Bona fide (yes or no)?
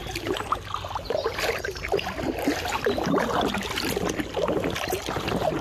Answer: yes